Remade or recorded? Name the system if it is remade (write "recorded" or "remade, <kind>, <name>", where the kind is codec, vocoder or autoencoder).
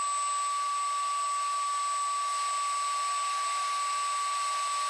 recorded